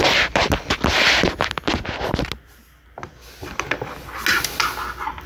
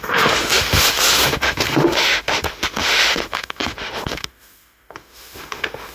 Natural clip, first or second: first